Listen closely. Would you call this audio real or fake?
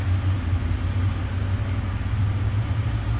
real